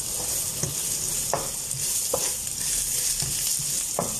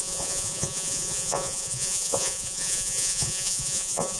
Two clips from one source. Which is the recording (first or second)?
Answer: first